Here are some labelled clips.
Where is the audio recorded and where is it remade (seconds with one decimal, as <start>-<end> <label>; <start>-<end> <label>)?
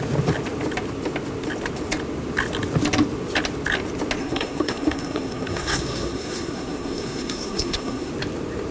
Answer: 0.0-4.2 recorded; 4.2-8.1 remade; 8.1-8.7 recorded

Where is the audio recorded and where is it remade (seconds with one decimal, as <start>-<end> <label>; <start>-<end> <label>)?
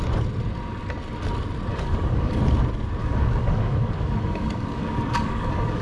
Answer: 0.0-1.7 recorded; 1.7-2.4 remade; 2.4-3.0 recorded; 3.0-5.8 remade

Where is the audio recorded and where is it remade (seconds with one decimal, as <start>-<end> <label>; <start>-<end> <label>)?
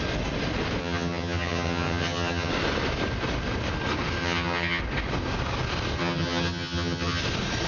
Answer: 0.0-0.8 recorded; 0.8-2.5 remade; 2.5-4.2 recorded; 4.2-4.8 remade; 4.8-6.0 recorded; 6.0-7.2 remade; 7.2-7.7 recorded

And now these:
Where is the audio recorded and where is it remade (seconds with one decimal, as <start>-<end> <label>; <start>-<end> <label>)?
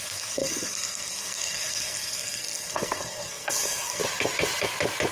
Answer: 0.0-4.0 remade; 4.0-5.1 recorded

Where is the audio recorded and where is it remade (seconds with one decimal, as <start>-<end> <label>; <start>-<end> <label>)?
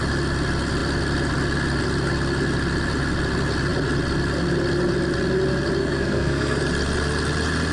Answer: 0.0-5.8 recorded; 5.8-6.6 remade; 6.6-7.7 recorded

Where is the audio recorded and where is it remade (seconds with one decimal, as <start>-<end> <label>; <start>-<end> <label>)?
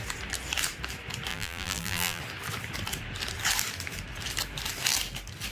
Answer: 0.0-1.3 recorded; 1.3-2.2 remade; 2.2-5.5 recorded